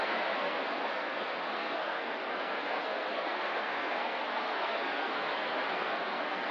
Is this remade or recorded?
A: remade